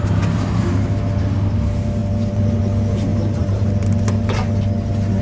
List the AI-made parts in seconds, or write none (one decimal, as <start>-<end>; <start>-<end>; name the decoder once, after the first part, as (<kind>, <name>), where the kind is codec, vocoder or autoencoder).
3.1-4.1 (vocoder, BigVGAN v2)